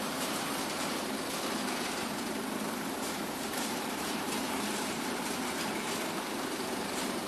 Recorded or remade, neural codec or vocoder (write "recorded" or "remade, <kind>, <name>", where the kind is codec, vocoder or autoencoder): remade, vocoder, BigVGAN v2